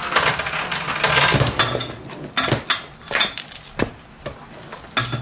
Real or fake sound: real